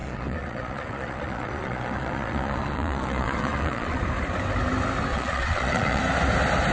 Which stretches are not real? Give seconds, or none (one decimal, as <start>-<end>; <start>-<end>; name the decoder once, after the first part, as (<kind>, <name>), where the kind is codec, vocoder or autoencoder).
0.0-4.0 (vocoder, Vocos); 5.1-6.0